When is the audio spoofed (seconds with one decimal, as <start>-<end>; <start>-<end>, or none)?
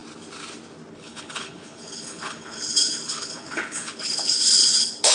0.9-5.1